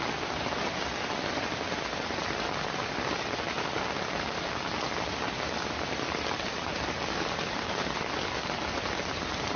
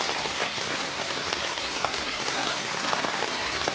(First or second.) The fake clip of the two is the second